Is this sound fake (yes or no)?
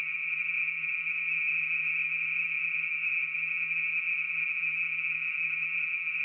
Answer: yes